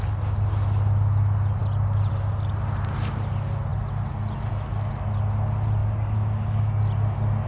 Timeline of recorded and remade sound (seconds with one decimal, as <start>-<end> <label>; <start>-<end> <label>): 0.0-5.8 recorded; 5.8-6.7 remade; 6.7-7.5 recorded